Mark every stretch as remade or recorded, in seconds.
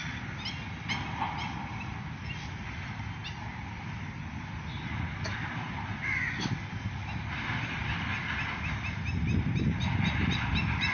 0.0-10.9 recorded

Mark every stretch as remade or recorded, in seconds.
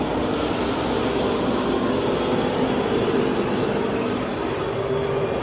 0.0-5.4 recorded